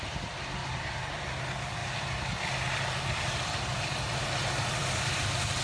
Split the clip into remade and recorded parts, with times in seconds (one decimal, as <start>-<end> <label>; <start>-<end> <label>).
0.0-0.6 recorded; 0.6-1.3 remade; 1.3-1.8 recorded; 1.8-5.6 remade